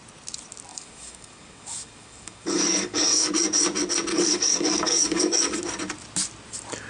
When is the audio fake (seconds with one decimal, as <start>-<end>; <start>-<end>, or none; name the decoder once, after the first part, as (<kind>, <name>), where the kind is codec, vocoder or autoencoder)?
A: 0.7-3.3 (codec, DAC); 4.1-5.6